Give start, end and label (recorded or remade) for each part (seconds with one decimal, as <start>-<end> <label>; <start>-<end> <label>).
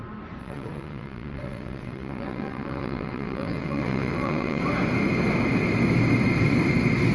0.0-0.4 recorded; 0.4-4.6 remade; 4.6-7.1 recorded